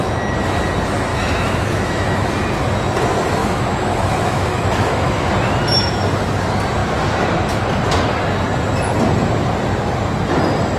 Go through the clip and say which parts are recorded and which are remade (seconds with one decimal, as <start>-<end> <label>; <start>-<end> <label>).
0.0-1.1 recorded; 1.1-2.3 remade; 2.3-3.4 recorded; 3.4-5.3 remade; 5.3-10.8 recorded